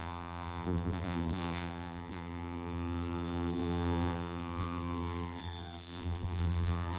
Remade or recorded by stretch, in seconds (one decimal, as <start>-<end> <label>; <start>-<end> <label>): 0.0-7.0 remade